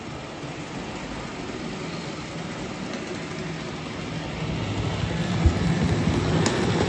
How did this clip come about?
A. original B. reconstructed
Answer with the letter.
A